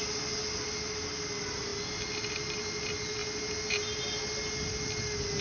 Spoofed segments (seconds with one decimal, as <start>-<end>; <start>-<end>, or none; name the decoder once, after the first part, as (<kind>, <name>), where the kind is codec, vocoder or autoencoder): none